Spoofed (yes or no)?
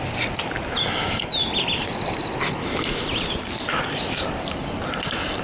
no